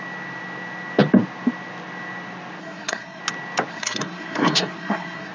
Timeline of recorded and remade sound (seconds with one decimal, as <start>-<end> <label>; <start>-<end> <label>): 0.0-2.6 recorded; 2.6-3.2 remade; 3.2-3.7 recorded; 3.7-5.3 remade